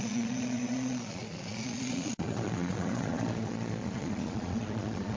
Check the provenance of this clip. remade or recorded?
remade